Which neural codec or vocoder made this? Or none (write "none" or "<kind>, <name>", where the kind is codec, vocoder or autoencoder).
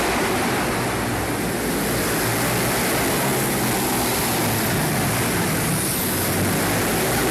none